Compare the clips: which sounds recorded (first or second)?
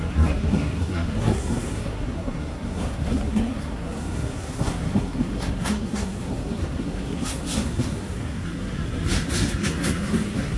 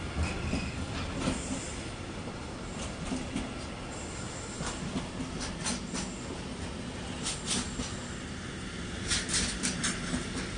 second